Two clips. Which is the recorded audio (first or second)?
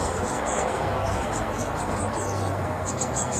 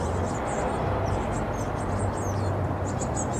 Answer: second